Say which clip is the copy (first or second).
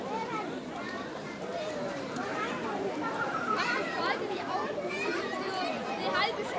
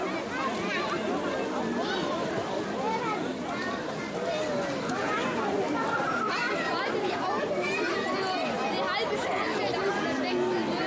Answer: first